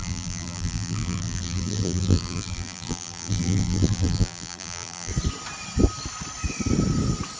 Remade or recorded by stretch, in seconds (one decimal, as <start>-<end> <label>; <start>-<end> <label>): 0.0-5.1 remade; 5.1-7.4 recorded